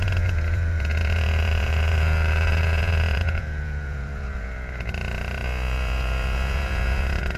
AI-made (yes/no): yes